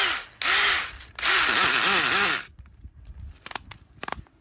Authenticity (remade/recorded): recorded